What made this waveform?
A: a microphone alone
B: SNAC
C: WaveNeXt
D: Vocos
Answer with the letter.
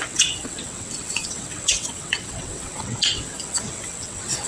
C